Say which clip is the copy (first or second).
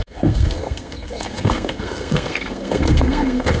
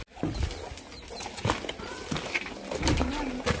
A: first